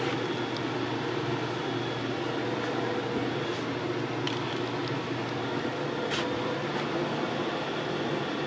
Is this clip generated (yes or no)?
no